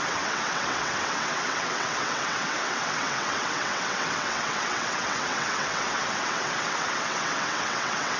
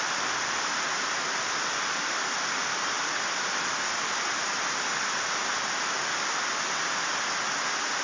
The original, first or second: second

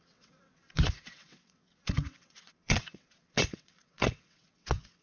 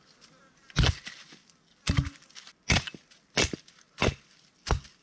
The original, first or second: second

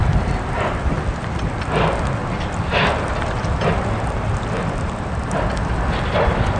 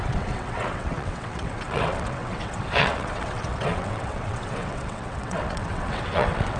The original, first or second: first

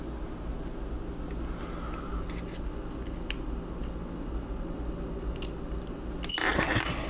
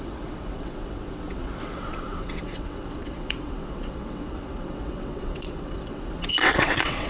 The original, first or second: first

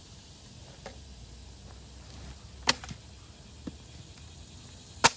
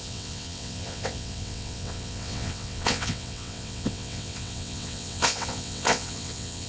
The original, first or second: first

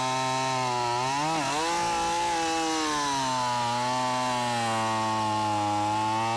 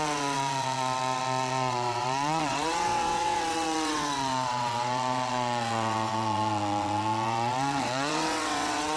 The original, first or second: first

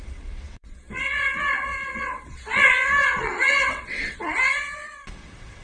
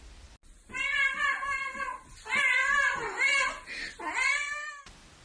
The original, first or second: second